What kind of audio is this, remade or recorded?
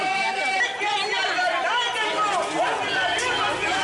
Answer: recorded